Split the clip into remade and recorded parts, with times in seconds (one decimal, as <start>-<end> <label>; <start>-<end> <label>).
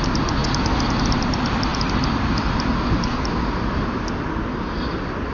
0.0-5.3 recorded